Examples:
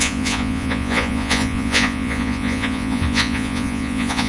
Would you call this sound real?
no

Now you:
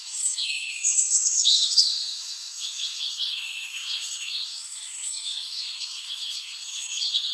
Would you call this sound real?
no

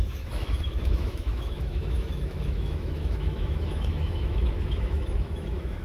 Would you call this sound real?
no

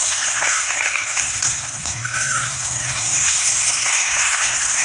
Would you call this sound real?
no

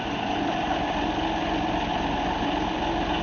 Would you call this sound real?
yes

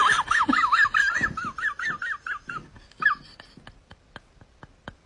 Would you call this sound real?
yes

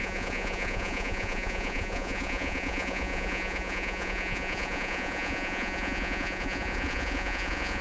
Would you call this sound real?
no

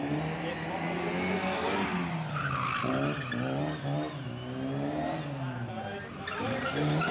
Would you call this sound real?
yes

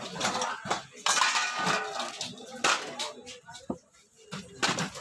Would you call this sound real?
yes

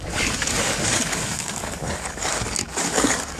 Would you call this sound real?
no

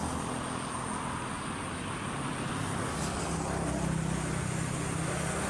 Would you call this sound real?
yes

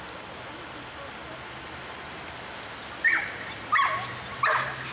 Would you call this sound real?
yes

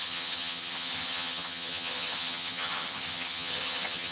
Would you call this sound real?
no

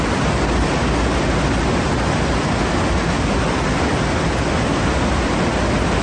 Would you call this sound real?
yes